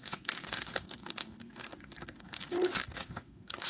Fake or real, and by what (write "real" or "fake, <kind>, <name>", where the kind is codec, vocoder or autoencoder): fake, codec, SNAC